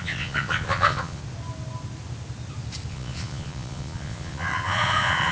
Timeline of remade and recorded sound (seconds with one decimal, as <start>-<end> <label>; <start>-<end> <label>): 0.0-1.2 remade; 1.2-2.9 recorded; 2.9-5.3 remade